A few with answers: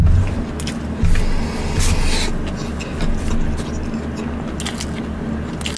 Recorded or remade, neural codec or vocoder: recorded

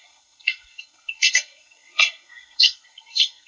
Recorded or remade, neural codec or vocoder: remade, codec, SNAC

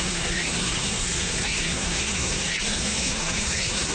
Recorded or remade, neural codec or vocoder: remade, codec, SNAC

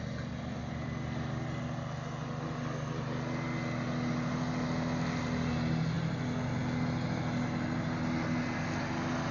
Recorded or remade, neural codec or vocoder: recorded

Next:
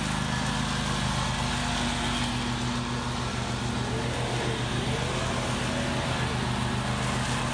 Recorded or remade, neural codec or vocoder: recorded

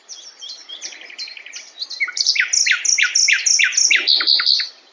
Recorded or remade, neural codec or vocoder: recorded